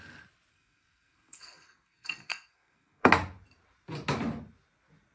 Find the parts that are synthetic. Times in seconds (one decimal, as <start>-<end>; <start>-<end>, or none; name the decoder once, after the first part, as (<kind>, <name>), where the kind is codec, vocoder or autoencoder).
0.5-3.1 (codec, SNAC)